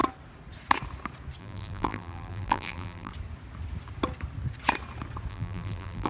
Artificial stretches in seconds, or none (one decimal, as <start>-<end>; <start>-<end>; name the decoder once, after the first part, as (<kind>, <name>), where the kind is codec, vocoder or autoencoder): 1.4-3.1 (vocoder, BigVGAN v2); 5.3-6.1